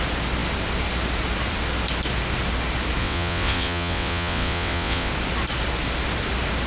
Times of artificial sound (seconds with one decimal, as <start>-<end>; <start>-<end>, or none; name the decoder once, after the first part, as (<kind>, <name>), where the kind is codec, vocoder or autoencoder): 3.0-5.1 (vocoder, WaveNeXt)